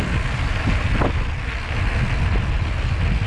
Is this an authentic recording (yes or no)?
yes